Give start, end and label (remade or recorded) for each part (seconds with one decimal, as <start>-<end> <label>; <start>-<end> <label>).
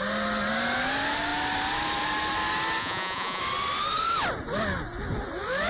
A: 0.0-2.8 recorded; 2.8-3.4 remade; 3.4-5.7 recorded